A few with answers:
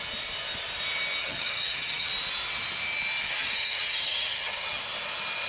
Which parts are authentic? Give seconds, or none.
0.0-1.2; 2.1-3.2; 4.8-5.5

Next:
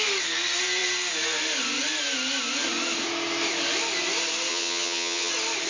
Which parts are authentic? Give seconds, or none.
0.0-4.5; 5.3-5.7

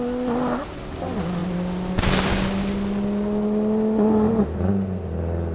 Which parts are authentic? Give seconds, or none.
0.0-5.5

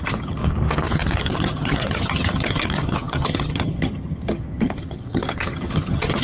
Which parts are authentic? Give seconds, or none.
0.4-1.2